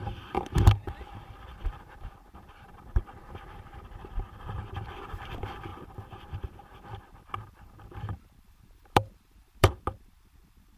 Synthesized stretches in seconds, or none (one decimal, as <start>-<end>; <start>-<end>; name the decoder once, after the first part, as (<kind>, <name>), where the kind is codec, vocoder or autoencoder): 0.0-10.8 (vocoder, BigVGAN v2)